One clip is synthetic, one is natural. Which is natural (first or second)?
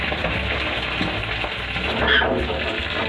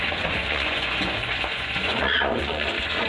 first